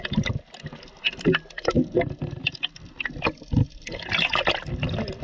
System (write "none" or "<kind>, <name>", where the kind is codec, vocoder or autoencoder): none